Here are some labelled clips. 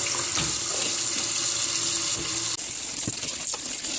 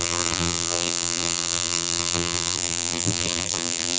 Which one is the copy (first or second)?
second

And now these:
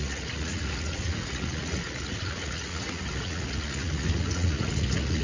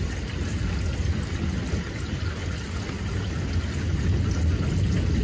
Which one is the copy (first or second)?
first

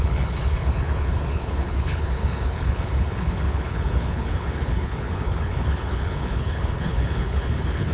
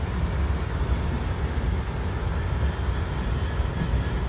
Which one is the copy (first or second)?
first